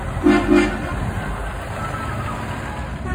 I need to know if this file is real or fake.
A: real